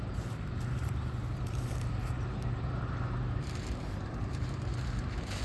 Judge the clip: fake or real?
fake